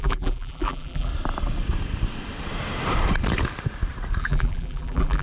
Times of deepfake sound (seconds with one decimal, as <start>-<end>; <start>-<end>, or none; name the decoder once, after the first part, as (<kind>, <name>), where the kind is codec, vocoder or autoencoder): 0.0-1.1 (vocoder, BigVGAN v2); 4.2-5.2